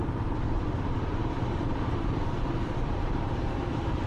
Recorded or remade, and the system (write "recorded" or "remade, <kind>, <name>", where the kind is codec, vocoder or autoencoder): remade, vocoder, BigVGAN v2